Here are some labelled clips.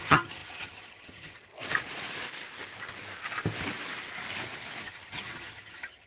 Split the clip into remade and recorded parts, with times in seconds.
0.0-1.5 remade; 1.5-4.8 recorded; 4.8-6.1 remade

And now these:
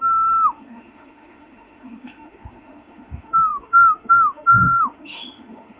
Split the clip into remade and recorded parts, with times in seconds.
0.0-5.8 remade

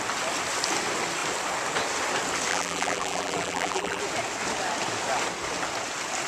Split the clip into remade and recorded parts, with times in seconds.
0.0-2.5 recorded; 2.5-4.0 remade; 4.0-6.3 recorded

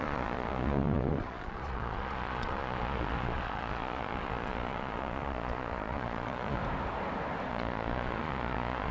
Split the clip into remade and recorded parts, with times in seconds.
0.0-6.6 remade; 6.6-7.5 recorded; 7.5-8.9 remade

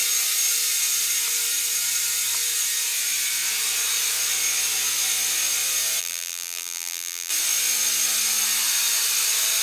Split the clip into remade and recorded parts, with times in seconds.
0.0-6.0 recorded; 6.0-7.3 remade; 7.3-9.6 recorded

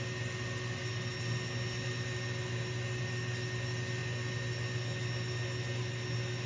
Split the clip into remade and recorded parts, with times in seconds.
0.0-6.5 recorded

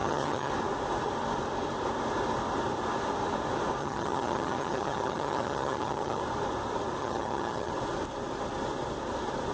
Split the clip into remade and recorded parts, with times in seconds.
0.0-0.5 remade; 0.5-3.8 recorded; 3.8-6.2 remade; 6.2-7.0 recorded; 7.0-7.7 remade; 7.7-9.5 recorded